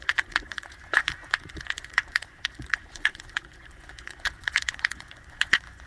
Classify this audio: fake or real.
fake